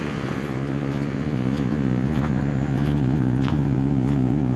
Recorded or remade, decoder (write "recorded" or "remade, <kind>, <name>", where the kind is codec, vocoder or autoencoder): remade, vocoder, Vocos